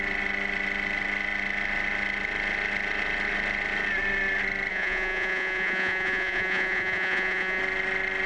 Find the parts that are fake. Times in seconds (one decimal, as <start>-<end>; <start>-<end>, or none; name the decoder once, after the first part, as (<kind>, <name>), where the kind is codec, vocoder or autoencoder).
4.7-7.6 (vocoder, Vocos)